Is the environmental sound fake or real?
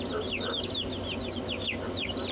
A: real